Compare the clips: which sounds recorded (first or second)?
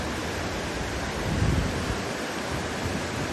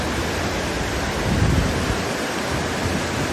second